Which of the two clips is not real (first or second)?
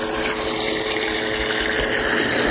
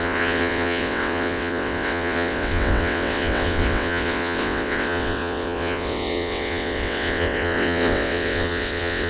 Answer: second